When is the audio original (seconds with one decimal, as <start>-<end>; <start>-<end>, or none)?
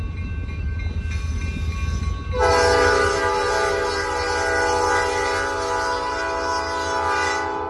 0.0-7.7